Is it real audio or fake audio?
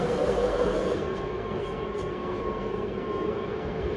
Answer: fake